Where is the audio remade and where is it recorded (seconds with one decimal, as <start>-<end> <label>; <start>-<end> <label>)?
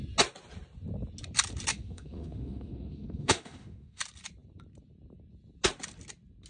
0.0-1.7 recorded; 1.7-4.0 remade; 4.0-6.5 recorded